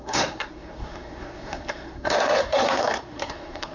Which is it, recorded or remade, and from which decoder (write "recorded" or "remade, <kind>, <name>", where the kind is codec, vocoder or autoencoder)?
remade, codec, SNAC